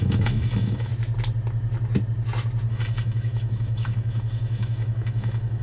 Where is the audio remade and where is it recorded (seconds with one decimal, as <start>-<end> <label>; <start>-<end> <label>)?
0.0-0.9 remade; 0.9-2.7 recorded; 2.7-5.6 remade